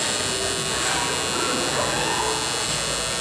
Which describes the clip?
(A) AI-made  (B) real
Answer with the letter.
B